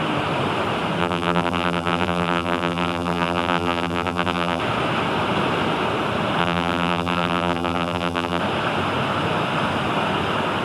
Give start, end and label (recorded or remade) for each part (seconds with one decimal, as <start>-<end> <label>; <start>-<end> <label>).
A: 0.0-1.0 recorded; 1.0-4.6 remade; 4.6-6.4 recorded; 6.4-8.4 remade; 8.4-10.6 recorded